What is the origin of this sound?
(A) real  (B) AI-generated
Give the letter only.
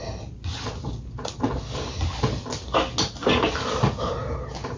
A